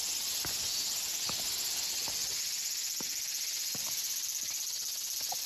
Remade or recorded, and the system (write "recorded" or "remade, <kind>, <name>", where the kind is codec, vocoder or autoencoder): recorded